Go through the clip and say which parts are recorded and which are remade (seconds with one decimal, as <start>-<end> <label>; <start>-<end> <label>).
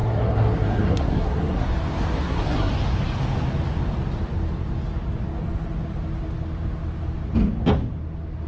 0.0-1.7 remade; 1.7-2.2 recorded; 2.2-2.7 remade; 2.7-8.5 recorded